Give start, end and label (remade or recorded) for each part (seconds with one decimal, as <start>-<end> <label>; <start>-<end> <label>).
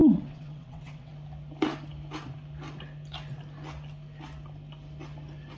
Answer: 0.0-1.1 remade; 1.1-5.6 recorded